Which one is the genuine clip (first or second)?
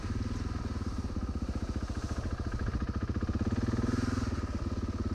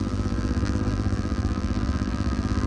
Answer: first